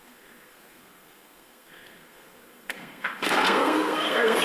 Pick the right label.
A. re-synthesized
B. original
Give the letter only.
A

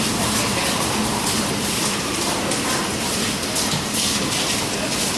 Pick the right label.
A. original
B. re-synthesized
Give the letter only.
B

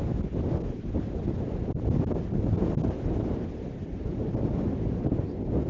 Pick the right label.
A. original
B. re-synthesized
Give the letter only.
A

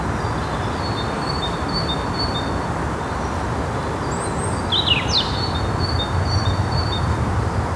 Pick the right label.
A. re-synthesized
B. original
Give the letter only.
B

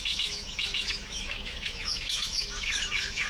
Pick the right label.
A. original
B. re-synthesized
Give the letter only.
B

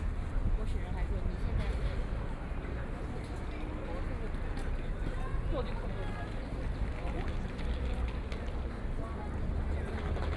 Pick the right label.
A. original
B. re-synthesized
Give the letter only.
A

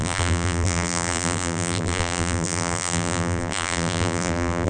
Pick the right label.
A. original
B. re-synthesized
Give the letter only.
B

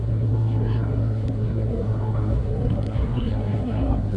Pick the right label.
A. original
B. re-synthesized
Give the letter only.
B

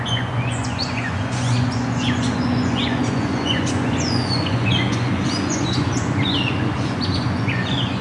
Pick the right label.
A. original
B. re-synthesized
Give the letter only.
B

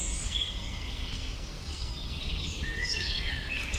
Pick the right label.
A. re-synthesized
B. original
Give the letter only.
A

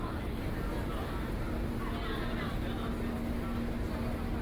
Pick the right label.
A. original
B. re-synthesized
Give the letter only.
A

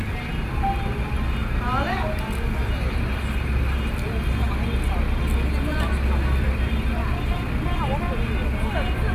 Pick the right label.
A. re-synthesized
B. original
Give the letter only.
B